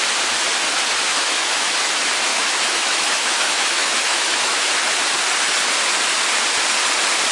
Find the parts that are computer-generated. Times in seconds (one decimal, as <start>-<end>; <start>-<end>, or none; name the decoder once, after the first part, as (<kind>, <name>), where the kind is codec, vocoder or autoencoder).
1.1-1.9 (autoencoder, DAC-VAE); 2.3-4.9